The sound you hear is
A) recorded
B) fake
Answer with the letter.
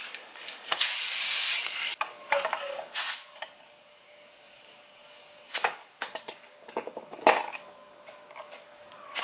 B